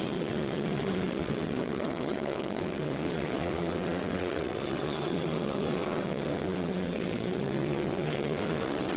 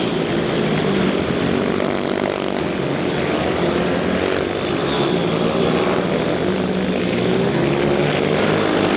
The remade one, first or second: first